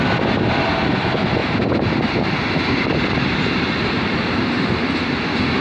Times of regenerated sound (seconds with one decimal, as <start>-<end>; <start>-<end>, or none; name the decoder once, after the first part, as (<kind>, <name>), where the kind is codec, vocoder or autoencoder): 1.4-4.8 (vocoder, BigVGAN v2)